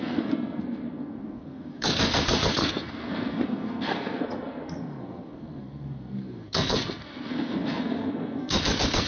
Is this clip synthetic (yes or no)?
yes